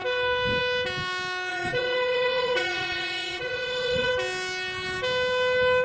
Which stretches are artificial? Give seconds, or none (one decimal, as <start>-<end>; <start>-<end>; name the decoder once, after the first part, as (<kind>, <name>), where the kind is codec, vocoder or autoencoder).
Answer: 1.5-4.1 (vocoder, Vocos)